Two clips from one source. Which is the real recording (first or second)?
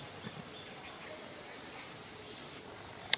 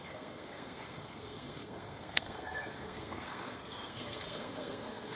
first